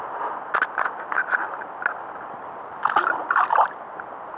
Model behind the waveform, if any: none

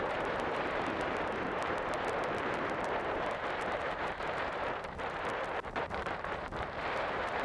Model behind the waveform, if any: vocoder, BigVGAN v2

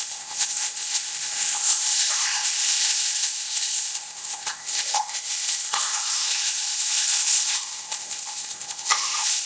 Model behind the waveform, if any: codec, ZipCodec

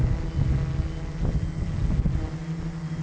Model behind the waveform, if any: none